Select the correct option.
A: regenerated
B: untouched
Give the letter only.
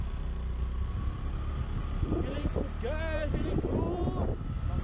B